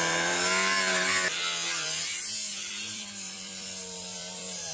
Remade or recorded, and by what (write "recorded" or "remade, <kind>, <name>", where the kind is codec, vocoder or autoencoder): remade, vocoder, BigVGAN v2